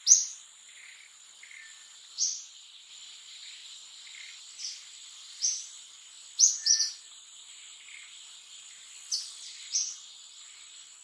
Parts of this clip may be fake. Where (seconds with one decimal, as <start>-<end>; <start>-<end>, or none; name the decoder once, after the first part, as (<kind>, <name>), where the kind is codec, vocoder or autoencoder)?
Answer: none